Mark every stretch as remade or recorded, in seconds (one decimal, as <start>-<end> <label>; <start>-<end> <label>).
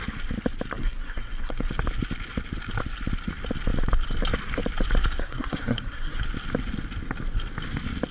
0.0-0.8 recorded; 0.8-1.7 remade; 1.7-5.2 recorded; 5.2-6.2 remade; 6.2-8.1 recorded